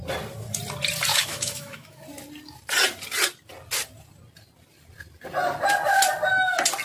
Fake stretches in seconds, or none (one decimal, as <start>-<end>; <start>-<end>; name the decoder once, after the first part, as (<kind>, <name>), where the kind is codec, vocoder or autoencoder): 1.1-2.0 (autoencoder, DAC-VAE)